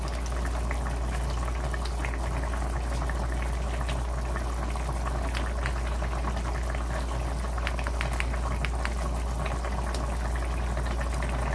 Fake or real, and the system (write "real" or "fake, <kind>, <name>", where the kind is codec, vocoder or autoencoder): real